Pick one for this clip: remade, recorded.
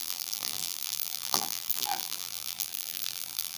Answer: remade